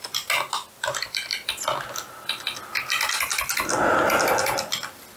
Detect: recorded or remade recorded